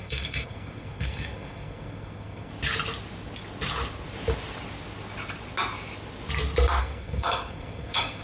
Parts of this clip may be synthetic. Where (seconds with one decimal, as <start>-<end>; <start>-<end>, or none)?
0.0-2.5; 6.8-8.2